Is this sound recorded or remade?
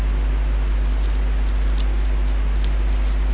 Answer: recorded